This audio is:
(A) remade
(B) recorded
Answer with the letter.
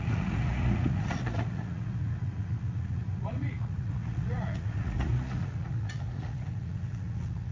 A